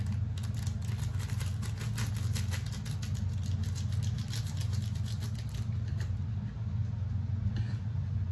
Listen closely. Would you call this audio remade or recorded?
recorded